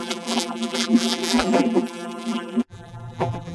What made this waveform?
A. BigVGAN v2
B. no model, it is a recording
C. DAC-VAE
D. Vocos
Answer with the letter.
A